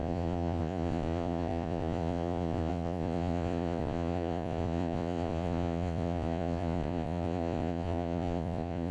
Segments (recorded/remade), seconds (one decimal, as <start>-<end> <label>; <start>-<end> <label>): 0.0-8.9 remade